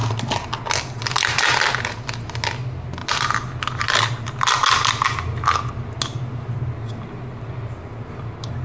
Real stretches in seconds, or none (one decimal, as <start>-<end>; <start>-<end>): 0.0-8.6